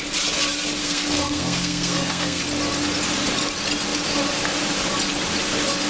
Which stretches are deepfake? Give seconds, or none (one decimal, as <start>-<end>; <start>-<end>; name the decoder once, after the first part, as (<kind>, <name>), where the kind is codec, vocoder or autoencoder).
0.8-2.4 (codec, SNAC)